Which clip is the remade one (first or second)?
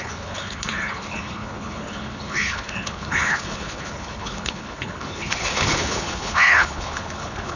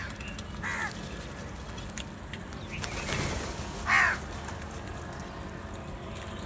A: first